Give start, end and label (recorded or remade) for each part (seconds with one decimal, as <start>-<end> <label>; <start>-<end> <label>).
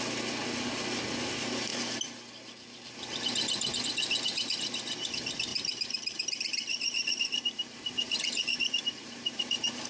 0.0-5.5 recorded; 5.5-9.9 remade